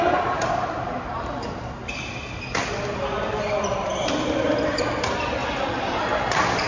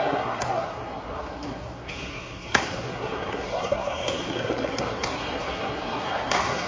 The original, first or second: first